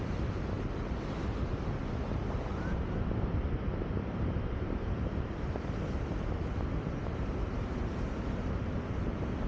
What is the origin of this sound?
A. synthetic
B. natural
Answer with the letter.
A